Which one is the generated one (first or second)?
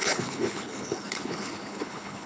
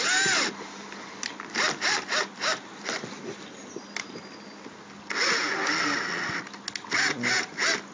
first